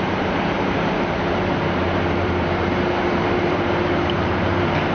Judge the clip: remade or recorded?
remade